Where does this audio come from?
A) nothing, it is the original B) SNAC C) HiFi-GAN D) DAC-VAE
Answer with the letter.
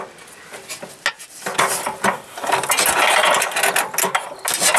A